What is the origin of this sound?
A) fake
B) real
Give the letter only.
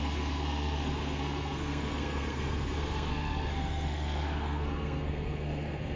A